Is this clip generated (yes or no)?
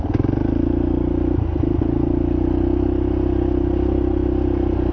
no